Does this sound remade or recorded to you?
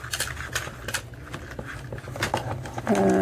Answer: recorded